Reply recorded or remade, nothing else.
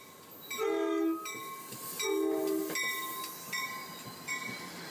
recorded